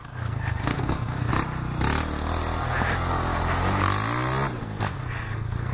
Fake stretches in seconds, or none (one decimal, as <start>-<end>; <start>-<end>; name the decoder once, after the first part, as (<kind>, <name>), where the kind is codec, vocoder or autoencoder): 0.0-1.3 (codec, SNAC); 4.6-5.7